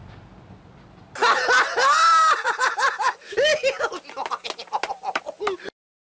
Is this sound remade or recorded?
recorded